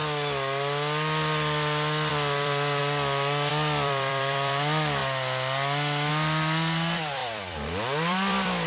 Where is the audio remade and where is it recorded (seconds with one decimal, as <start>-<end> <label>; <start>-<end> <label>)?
0.0-2.1 recorded; 2.1-2.8 remade; 2.8-3.5 recorded; 3.5-5.0 remade; 5.0-6.1 recorded; 6.1-8.7 remade